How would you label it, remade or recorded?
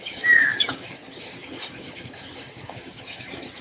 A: remade